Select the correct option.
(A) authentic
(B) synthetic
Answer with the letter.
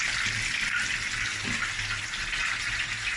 A